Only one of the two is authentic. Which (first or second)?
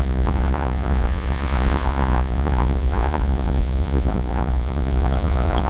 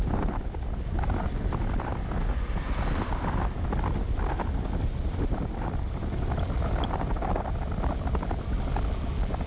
second